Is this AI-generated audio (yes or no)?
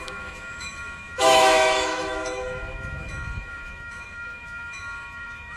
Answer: yes